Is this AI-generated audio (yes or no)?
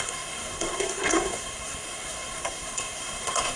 yes